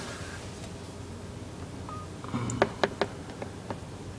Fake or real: real